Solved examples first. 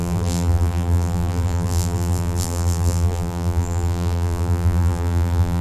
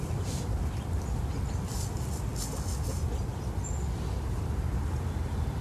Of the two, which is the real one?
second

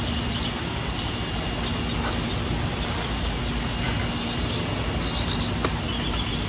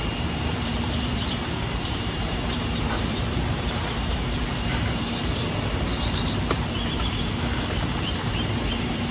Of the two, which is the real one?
first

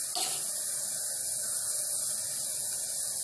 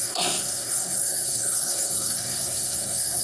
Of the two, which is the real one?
first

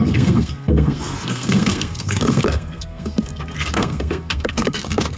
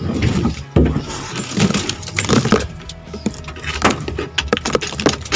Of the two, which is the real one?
second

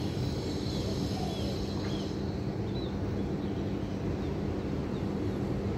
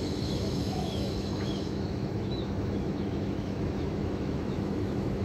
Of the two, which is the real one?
first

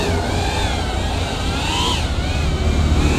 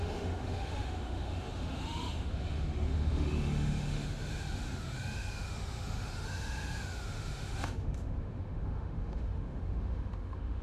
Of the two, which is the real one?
first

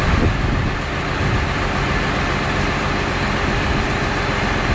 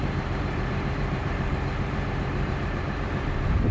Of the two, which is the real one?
first